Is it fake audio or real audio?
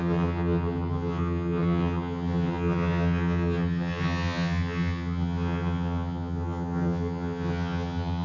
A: fake